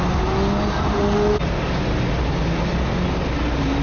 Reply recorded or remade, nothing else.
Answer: recorded